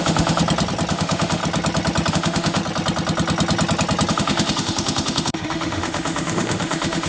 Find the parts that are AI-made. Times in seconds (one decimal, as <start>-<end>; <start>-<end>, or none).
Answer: 0.0-0.4; 0.9-1.4; 2.1-2.6; 4.1-7.1